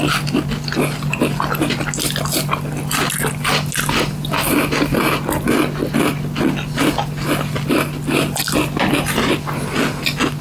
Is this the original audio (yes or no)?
yes